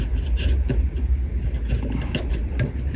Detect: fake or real real